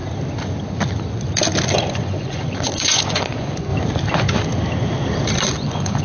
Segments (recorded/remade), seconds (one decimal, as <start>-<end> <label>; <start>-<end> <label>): 0.0-1.9 recorded; 1.9-3.7 remade; 3.7-5.4 recorded; 5.4-6.0 remade